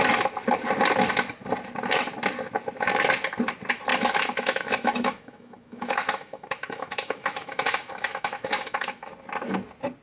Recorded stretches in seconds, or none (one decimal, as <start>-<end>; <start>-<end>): 0.0-3.9; 9.1-10.0